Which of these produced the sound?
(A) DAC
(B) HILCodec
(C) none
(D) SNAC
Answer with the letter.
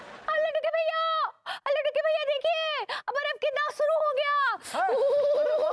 C